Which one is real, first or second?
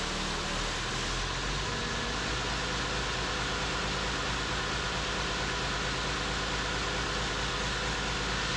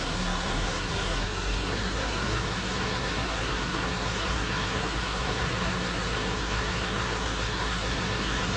first